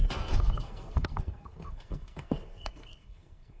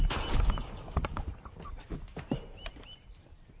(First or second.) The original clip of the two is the second